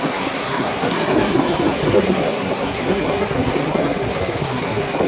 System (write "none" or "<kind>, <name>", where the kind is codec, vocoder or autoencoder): codec, SNAC